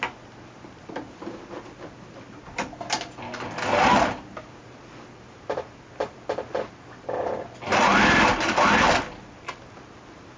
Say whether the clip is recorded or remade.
recorded